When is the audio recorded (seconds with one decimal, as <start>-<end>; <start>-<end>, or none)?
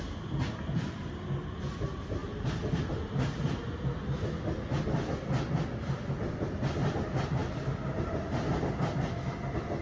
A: 0.0-9.8